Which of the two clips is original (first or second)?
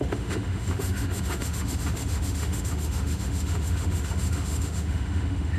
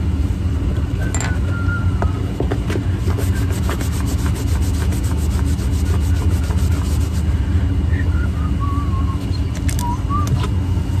second